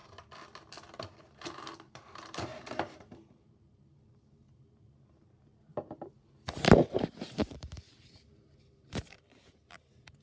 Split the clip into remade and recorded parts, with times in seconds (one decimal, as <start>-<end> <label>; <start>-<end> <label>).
0.0-1.2 recorded; 1.2-10.2 remade